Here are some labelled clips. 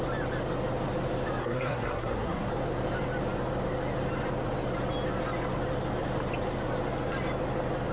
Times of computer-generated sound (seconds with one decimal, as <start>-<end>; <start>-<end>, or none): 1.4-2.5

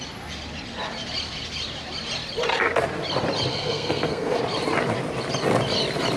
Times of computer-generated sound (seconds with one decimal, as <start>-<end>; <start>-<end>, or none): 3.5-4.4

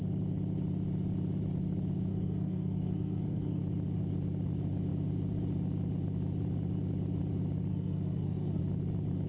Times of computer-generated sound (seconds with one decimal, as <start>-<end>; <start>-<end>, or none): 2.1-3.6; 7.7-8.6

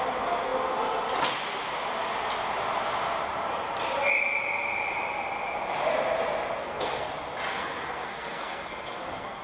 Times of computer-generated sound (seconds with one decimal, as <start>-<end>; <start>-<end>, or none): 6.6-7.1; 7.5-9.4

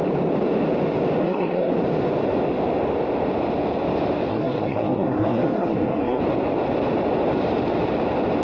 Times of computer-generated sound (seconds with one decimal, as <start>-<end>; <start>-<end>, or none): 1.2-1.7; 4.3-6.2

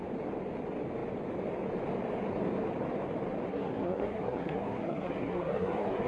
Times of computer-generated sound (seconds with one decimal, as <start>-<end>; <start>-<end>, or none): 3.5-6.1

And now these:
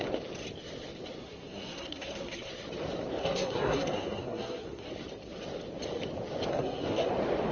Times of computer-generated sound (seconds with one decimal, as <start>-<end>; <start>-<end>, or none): 1.2-2.5; 3.2-4.9; 6.5-7.1

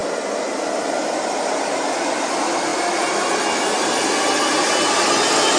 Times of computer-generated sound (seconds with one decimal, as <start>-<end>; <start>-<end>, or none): none